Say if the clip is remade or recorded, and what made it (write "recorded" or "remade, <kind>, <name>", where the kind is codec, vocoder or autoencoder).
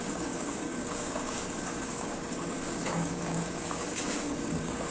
remade, codec, DAC